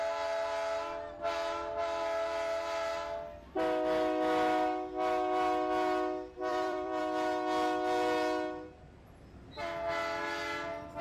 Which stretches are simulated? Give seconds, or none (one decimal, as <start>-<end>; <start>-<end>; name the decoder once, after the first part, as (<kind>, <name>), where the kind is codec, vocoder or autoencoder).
6.5-7.0 (vocoder, BigVGAN v2)